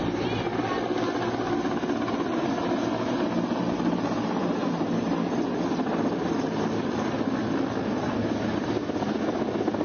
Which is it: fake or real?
real